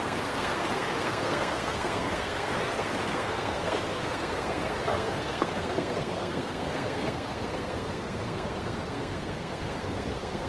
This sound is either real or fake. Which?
fake